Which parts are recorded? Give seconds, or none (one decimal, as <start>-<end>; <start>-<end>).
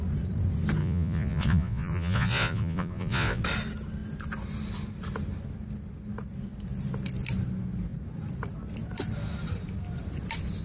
0.0-0.8; 3.4-10.6